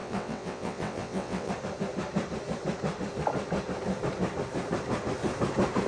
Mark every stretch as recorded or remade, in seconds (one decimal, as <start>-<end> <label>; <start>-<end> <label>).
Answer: 0.0-1.5 remade; 1.5-5.9 recorded